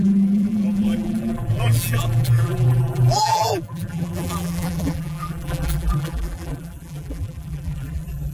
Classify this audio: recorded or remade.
remade